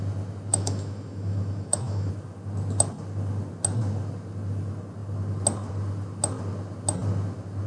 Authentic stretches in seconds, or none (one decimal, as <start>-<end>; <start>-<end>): 0.0-0.5; 2.1-7.7